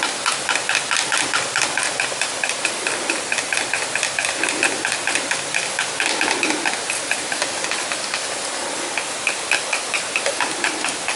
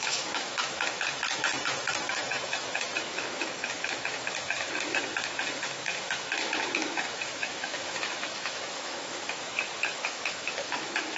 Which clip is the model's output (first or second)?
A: second